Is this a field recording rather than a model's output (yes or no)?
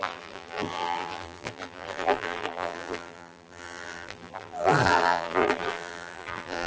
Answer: no